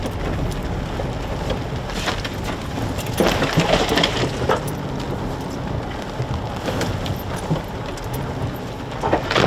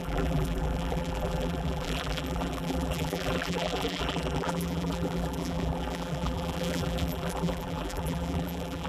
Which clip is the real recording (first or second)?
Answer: first